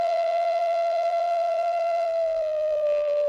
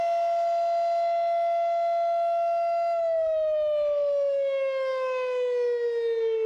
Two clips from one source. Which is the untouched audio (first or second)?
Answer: second